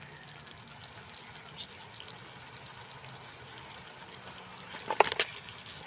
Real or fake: real